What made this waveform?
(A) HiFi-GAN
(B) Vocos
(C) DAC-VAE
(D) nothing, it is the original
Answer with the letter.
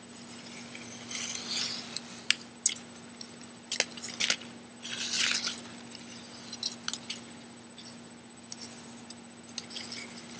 D